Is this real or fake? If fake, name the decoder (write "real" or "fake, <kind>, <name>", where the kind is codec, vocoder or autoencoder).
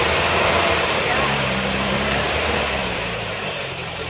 fake, vocoder, BigVGAN v2